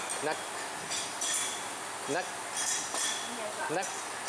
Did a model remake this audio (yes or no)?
no